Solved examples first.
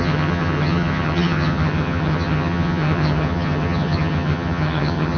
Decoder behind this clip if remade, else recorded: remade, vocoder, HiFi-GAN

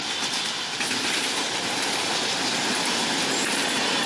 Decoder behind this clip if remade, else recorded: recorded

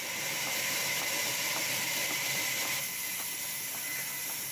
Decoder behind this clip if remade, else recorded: recorded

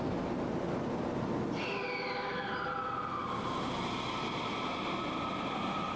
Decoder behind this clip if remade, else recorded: recorded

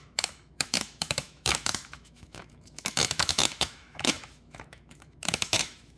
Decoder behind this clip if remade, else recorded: remade, autoencoder, DAC-VAE